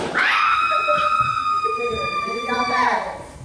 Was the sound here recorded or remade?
recorded